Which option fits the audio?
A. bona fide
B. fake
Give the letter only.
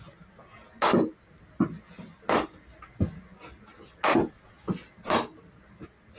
A